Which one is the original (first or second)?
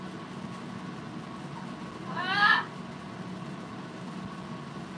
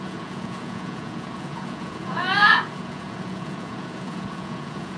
first